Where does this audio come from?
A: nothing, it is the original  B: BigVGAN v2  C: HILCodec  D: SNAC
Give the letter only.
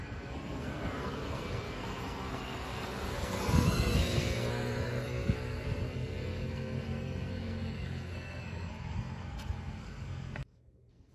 D